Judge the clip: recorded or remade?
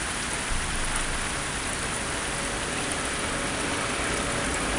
recorded